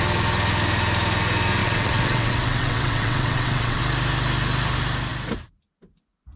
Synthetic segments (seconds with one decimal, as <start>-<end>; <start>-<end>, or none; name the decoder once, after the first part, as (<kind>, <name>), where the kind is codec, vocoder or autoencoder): 1.6-3.8 (vocoder, WaveNeXt)